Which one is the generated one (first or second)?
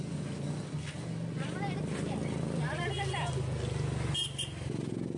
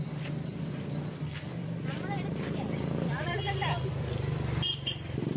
second